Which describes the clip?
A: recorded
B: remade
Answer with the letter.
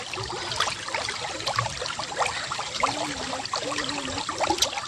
A